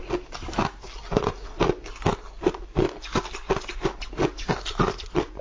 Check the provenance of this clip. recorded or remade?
recorded